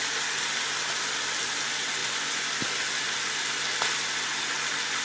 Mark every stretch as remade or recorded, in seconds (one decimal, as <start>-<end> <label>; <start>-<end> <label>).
0.0-2.0 recorded; 2.0-2.5 remade; 2.5-5.0 recorded